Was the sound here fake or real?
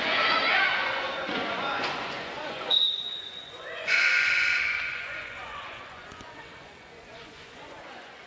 fake